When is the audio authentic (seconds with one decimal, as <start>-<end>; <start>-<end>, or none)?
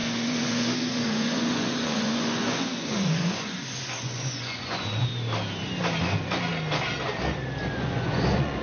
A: 5.1-7.7